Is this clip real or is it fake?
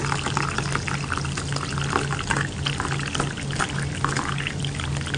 real